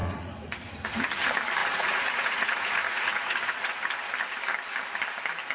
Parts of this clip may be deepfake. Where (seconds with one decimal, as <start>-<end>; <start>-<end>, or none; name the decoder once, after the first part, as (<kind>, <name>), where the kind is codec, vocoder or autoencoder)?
0.0-1.1 (vocoder, Vocos); 1.6-3.9

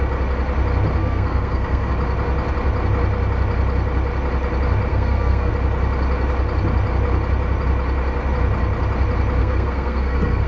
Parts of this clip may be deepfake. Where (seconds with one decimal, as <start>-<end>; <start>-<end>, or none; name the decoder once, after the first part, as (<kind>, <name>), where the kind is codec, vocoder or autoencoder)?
1.0-1.9 (codec, SNAC); 4.9-5.5; 9.4-10.5

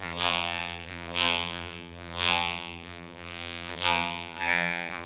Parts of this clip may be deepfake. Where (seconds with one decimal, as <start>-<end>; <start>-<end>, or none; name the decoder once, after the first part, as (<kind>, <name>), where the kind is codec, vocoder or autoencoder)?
0.0-5.1 (vocoder, BigVGAN v2)

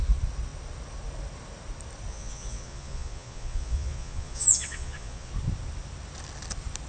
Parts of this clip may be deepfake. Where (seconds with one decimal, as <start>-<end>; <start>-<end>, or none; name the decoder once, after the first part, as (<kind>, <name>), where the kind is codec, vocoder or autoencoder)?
2.1-5.3 (vocoder, Vocos)

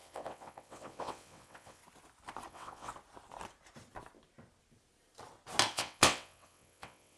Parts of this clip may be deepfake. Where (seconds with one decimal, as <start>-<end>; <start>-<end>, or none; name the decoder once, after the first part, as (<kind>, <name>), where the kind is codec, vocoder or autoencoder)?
0.0-1.8 (vocoder, WaveNeXt); 2.5-2.9; 5.7-7.2